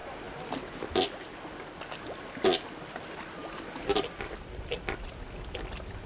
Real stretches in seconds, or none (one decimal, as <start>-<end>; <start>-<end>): 0.0-6.1